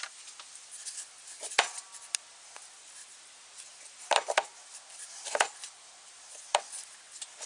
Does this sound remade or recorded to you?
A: recorded